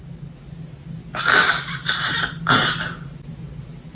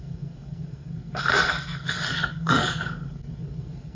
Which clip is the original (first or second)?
first